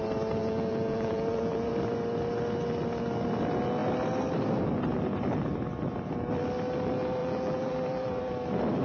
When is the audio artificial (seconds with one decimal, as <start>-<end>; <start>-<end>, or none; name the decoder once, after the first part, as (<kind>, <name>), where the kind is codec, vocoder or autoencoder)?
0.4-1.7 (vocoder, BigVGAN v2); 7.2-8.3